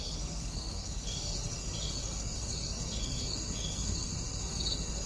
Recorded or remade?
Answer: remade